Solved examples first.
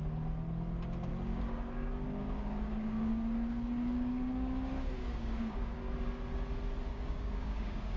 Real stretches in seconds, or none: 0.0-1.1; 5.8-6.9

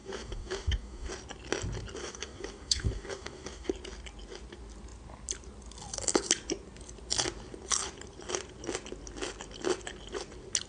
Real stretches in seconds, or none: 1.1-2.0; 3.7-10.7

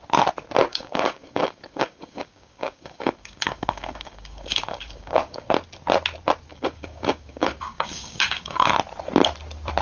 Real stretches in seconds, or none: 0.0-0.7; 5.5-6.5; 8.7-9.8

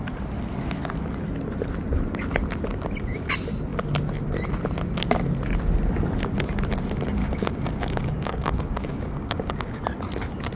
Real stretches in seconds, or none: 0.0-7.2; 9.8-10.6

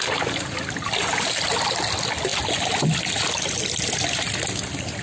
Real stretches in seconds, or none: 0.0-5.0

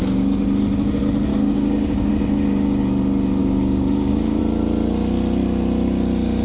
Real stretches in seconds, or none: 0.0-1.3; 2.1-3.4; 4.4-6.4

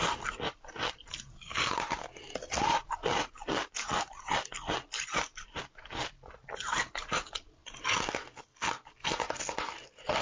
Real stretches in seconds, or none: 0.0-10.2